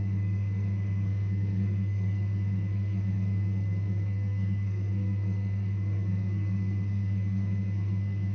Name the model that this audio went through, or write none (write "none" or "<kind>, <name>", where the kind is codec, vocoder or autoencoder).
codec, SNAC